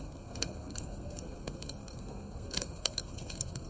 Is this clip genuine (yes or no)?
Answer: no